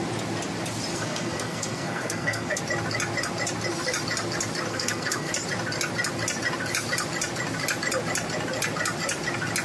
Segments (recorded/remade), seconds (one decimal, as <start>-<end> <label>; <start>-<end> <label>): 0.0-0.9 recorded; 0.9-2.6 remade; 2.6-4.7 recorded; 4.7-5.3 remade; 5.3-9.6 recorded

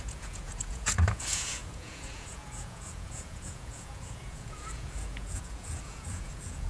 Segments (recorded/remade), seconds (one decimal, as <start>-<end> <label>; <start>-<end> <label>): 0.0-6.7 remade